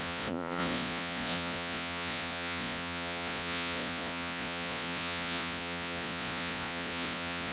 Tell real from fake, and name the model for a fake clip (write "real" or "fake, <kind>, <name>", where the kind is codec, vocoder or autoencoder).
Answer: fake, vocoder, Vocos